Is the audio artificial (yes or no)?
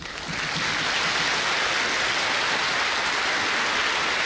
no